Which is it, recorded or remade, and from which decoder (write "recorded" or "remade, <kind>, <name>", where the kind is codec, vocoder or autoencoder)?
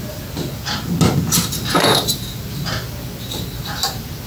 recorded